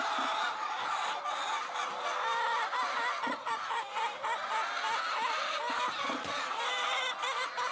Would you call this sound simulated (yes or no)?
no